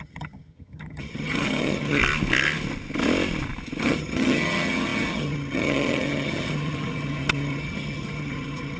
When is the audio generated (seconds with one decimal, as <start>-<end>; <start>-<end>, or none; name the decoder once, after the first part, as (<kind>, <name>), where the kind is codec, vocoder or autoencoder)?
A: 0.0-2.0 (vocoder, HiFi-GAN); 3.8-8.8